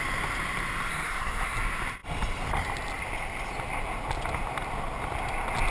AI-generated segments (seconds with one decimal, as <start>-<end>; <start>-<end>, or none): 0.9-1.6